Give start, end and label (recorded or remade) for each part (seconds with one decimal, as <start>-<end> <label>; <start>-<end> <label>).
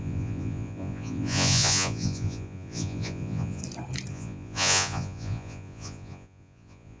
0.0-3.6 remade; 3.6-4.1 recorded; 4.1-7.0 remade